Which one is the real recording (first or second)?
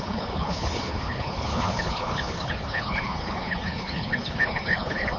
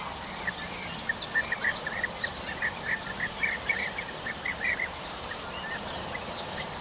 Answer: second